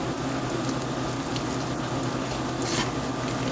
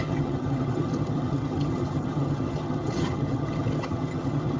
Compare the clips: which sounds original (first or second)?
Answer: first